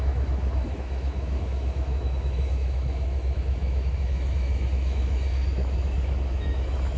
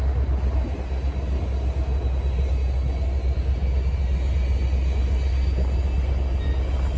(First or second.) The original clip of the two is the second